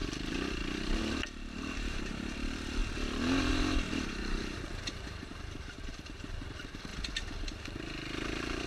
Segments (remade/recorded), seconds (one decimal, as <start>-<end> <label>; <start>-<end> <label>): 0.0-1.0 recorded; 1.0-2.8 remade; 2.8-3.5 recorded; 3.5-6.9 remade; 6.9-8.7 recorded